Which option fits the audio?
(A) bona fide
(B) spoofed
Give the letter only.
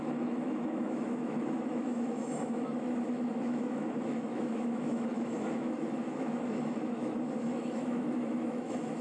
B